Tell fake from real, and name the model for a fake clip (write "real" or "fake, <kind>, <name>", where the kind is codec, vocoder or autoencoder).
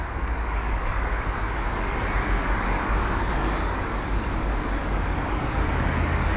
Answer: fake, codec, DAC